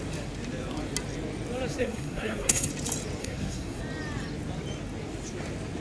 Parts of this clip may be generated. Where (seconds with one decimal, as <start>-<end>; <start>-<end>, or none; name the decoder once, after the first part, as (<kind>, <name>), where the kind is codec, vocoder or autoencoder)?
1.8-2.7 (codec, SNAC); 3.2-3.8